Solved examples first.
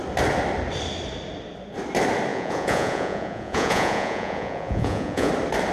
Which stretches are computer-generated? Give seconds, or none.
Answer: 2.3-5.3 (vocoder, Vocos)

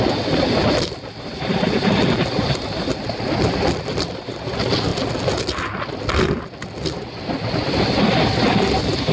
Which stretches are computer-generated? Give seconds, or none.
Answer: none

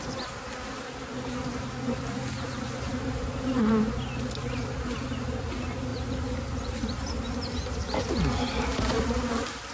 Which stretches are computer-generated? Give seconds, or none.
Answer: none

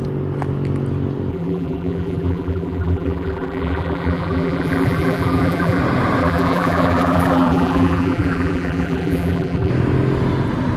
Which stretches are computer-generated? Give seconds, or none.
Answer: 1.3-5.8 (vocoder, BigVGAN v2); 6.2-9.7

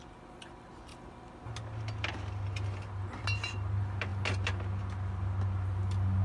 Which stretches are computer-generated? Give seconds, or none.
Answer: none

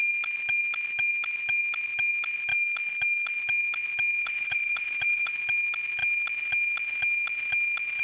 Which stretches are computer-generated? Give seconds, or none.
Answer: 4.2-5.3 (vocoder, Vocos)

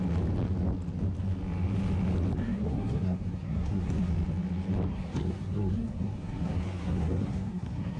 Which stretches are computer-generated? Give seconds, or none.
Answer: 2.4-4.1 (codec, SNAC); 4.9-8.0

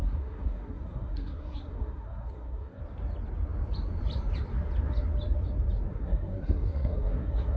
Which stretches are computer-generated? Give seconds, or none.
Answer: 0.0-2.8 (codec, SNAC); 5.9-7.6